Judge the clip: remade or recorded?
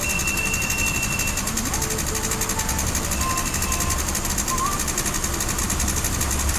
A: recorded